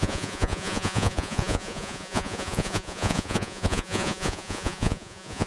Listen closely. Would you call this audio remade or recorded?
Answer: remade